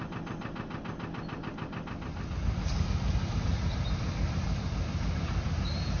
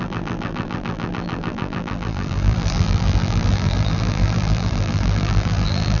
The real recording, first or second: first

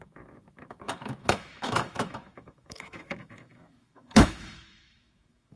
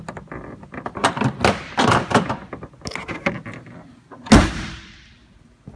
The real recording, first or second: second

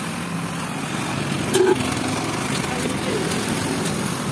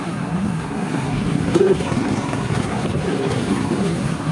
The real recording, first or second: first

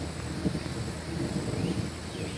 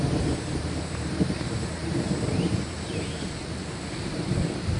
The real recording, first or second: first